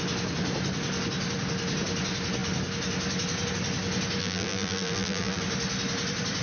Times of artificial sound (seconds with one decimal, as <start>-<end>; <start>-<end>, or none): 4.2-5.4

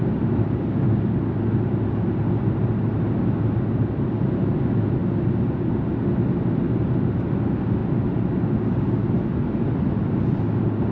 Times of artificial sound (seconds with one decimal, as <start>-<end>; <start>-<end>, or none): none

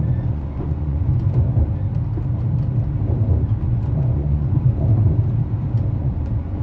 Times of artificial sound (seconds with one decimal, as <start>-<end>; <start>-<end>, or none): 0.0-1.1; 3.6-4.9; 6.0-6.6

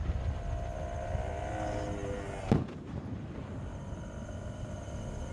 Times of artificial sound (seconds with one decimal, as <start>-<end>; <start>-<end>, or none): none